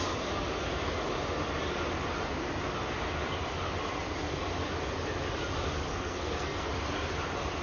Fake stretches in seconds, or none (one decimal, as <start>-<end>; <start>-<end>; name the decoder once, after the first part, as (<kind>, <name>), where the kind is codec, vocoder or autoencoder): 5.9-6.7 (codec, SNAC)